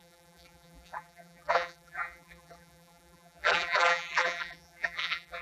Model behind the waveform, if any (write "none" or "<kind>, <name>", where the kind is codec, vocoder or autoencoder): vocoder, BigVGAN v2